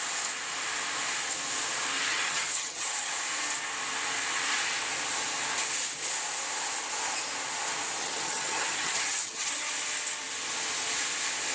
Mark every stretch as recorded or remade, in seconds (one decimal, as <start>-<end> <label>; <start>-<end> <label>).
0.0-2.1 recorded; 2.1-3.1 remade; 3.1-8.0 recorded; 8.0-9.7 remade; 9.7-11.5 recorded